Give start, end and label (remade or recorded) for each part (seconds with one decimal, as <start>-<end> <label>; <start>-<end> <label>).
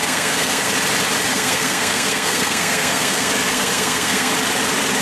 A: 0.0-0.7 remade; 0.7-1.3 recorded; 1.3-4.3 remade; 4.3-5.0 recorded